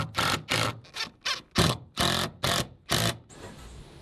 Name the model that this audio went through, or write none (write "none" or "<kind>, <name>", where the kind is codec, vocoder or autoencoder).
none